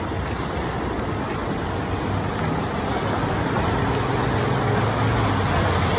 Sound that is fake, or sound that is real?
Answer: real